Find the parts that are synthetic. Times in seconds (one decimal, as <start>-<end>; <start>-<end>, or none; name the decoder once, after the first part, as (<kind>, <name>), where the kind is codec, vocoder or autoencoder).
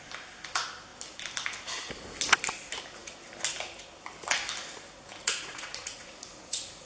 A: 5.2-6.9 (vocoder, Vocos)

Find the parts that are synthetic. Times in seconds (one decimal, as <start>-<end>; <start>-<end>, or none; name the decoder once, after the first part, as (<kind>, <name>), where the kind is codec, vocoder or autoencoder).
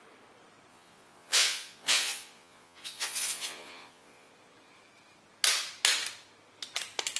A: 0.7-4.3 (vocoder, Vocos)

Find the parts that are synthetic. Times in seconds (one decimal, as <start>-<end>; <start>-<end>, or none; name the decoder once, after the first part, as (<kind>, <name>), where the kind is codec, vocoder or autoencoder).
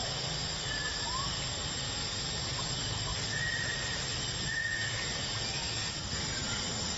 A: none